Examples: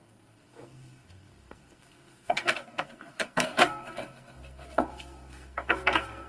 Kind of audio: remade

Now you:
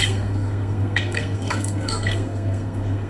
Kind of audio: remade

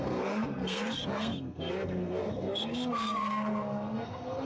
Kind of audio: remade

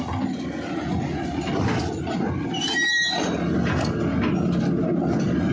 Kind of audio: recorded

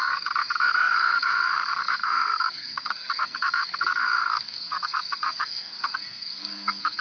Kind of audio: remade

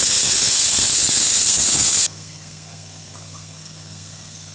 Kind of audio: remade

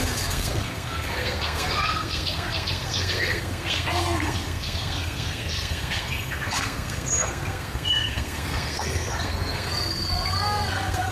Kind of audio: remade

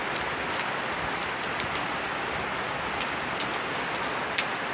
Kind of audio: recorded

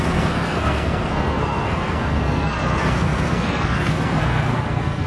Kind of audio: remade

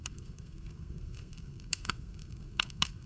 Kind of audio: remade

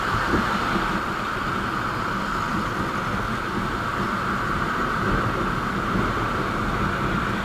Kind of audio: recorded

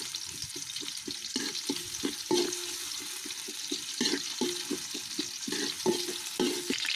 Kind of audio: recorded